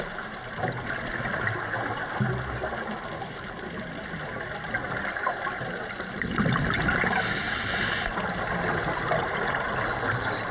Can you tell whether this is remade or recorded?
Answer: recorded